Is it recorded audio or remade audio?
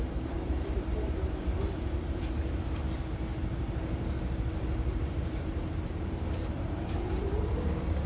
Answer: remade